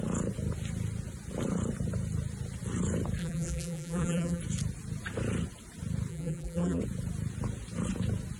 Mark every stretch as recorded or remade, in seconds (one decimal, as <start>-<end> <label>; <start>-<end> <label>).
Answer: 0.0-3.2 recorded; 3.2-4.4 remade; 4.4-6.1 recorded; 6.1-6.8 remade; 6.8-8.4 recorded